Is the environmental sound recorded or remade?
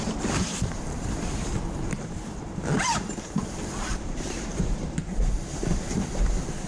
remade